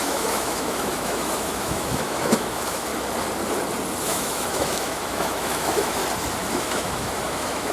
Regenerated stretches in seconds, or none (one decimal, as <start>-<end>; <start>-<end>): 0.0-2.9; 4.0-6.0; 6.5-7.7